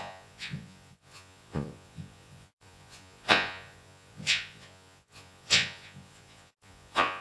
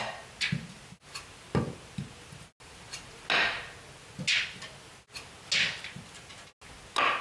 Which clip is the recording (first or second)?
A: second